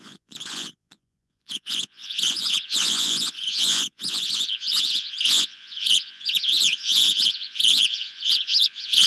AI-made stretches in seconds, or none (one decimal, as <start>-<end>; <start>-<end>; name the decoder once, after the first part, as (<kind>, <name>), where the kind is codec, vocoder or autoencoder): 0.0-9.1 (vocoder, Vocos)